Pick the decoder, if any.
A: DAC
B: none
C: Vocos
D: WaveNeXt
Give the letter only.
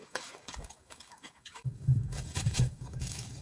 A